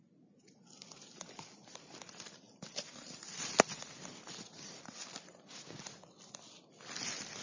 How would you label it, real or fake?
real